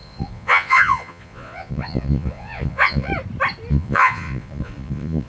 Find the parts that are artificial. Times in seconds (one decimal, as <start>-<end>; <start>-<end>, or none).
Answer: 0.0-3.1; 3.7-5.3